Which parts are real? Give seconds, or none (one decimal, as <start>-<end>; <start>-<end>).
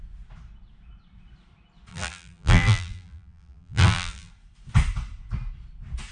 0.0-1.9; 4.3-6.1